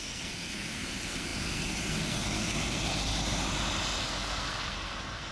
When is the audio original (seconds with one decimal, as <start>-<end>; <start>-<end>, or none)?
3.1-4.1